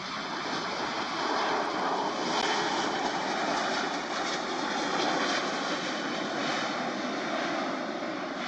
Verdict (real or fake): real